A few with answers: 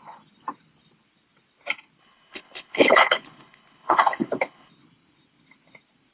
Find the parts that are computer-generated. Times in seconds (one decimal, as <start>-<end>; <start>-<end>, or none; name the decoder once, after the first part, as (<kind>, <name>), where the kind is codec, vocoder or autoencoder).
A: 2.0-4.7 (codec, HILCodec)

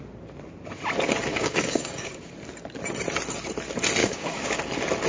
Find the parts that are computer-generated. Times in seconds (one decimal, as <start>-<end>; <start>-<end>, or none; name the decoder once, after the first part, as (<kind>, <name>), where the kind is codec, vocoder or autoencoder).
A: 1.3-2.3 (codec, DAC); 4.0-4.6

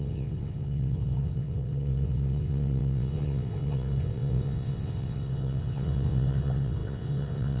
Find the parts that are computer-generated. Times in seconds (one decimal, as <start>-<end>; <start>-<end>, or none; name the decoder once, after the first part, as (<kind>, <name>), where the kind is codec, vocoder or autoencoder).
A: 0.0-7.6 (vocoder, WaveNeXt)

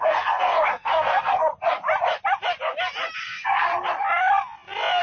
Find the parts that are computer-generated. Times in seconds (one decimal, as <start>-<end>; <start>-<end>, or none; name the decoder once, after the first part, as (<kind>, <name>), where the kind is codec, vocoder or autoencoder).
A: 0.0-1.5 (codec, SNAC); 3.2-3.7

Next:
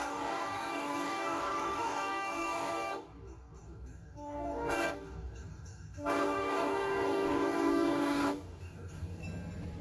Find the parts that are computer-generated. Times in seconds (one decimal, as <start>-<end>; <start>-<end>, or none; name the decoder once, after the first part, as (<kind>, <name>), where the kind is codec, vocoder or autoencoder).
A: 0.0-9.2 (codec, DAC)

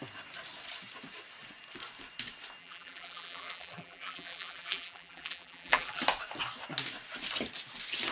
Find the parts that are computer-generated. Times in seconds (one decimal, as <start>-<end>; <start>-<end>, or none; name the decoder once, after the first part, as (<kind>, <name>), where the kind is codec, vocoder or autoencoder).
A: 2.6-6.0 (vocoder, BigVGAN v2)

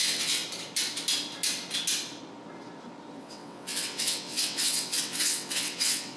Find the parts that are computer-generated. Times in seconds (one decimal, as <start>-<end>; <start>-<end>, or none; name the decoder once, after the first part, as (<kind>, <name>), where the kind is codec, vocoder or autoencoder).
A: 0.0-0.4 (vocoder, WaveNeXt); 3.2-6.2